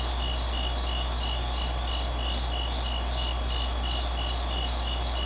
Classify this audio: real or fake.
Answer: real